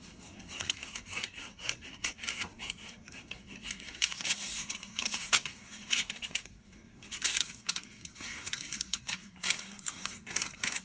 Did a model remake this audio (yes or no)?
yes